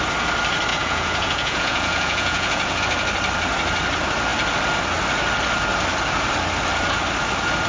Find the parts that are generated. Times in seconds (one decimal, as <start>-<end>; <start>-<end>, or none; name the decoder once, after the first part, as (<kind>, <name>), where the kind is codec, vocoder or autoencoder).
0.7-2.8 (vocoder, Vocos)